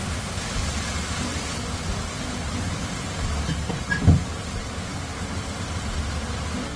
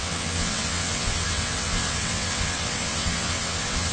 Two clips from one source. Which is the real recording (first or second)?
first